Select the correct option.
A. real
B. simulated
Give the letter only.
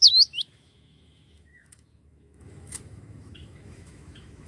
B